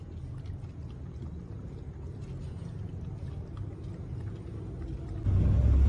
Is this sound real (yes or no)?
yes